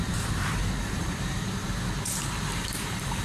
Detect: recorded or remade remade